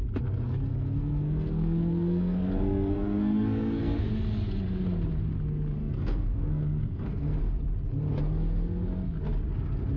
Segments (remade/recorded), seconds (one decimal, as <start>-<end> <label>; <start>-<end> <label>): 0.0-0.7 recorded; 0.7-4.1 remade; 4.1-5.8 recorded; 5.8-7.4 remade; 7.4-10.0 recorded